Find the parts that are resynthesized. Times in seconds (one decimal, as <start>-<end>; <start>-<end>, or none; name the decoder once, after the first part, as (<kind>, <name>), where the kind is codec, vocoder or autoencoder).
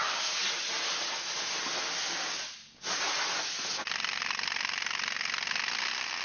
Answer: none